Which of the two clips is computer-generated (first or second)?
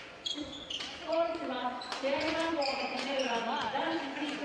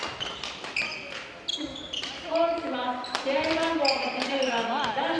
first